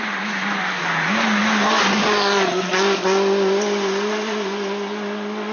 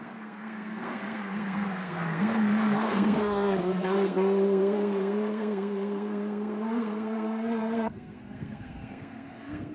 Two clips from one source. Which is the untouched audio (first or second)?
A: first